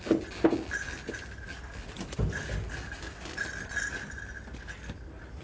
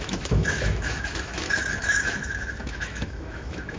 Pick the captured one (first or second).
first